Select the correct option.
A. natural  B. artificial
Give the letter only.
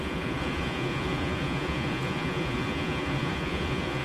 B